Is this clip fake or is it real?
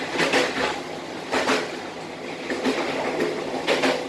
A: real